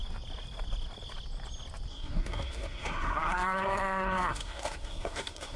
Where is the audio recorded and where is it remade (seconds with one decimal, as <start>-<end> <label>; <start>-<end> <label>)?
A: 0.0-1.9 recorded; 1.9-5.6 remade